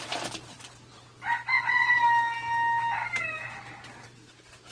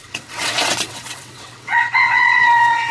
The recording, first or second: first